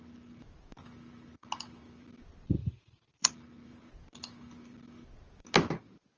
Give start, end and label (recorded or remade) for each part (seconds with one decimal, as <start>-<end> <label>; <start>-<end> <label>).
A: 0.0-2.6 recorded; 2.6-3.3 remade; 3.3-6.2 recorded